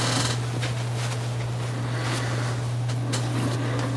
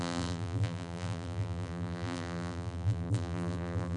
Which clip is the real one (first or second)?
first